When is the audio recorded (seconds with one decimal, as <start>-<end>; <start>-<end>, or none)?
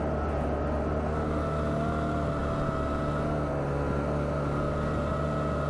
0.0-5.7